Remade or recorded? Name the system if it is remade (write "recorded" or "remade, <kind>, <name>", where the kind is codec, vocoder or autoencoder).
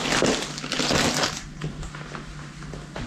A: recorded